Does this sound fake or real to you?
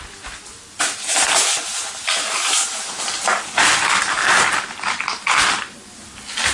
real